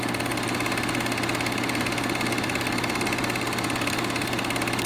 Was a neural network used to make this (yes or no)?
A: no